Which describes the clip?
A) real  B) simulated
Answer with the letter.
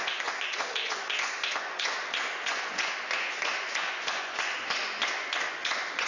B